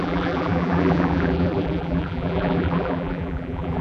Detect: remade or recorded remade